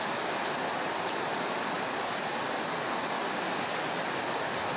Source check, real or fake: real